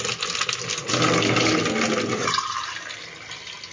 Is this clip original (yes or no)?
yes